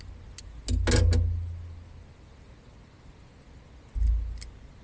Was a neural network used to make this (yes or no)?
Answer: no